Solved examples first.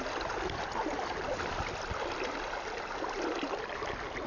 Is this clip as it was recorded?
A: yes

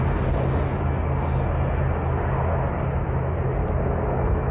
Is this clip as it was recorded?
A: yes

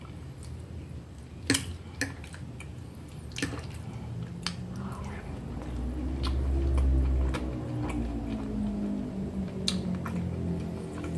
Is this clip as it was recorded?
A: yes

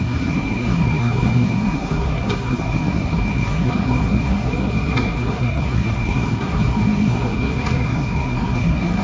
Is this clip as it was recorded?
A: no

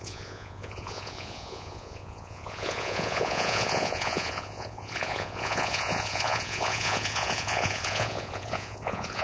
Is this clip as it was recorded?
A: no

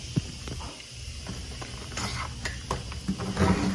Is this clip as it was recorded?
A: yes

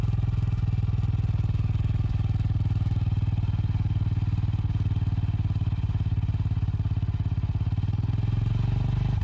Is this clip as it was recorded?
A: yes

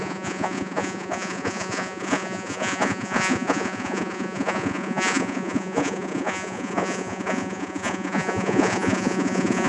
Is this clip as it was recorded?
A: no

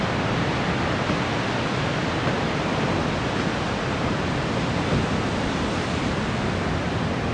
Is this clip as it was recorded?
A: yes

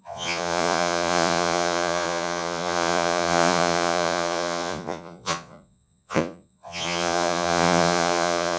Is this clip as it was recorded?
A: no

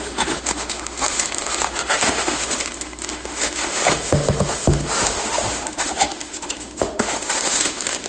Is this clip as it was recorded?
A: no